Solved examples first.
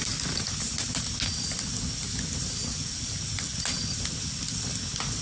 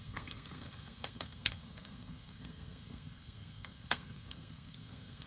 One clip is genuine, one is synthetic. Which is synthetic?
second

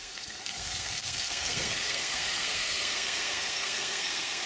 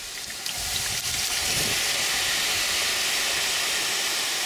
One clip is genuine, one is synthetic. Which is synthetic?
first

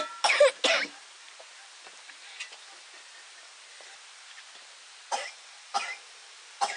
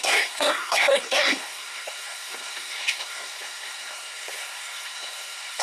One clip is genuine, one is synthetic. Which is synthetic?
second